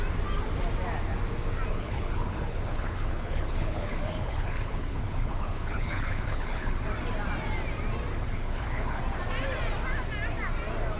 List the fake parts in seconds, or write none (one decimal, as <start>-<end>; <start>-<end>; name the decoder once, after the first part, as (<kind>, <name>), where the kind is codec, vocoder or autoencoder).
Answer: 1.7-6.8 (codec, HILCodec); 8.1-9.0